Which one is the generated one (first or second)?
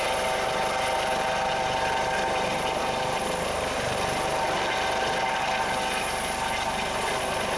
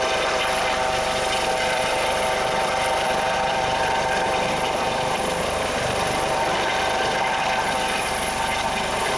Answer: second